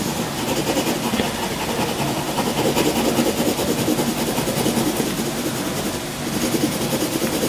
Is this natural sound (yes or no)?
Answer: yes